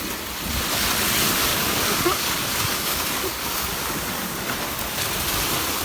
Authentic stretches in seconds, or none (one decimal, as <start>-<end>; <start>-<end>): 0.0-1.5; 4.5-5.8